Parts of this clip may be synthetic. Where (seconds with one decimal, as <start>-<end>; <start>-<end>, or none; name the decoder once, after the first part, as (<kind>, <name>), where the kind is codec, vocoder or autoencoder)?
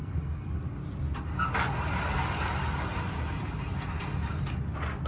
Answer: 0.0-0.5 (codec, SNAC)